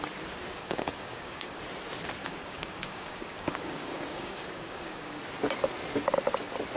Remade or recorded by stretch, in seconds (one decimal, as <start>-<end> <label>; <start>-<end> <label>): 0.0-0.6 recorded; 0.6-1.6 remade; 1.6-2.2 recorded; 2.2-5.2 remade; 5.2-6.8 recorded